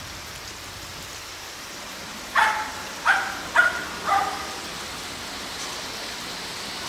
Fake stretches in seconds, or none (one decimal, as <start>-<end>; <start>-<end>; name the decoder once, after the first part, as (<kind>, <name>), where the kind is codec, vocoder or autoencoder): 0.9-4.3 (vocoder, BigVGAN v2)